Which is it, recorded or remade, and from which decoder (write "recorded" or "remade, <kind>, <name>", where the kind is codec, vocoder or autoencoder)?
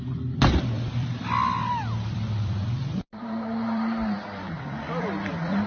remade, vocoder, BigVGAN v2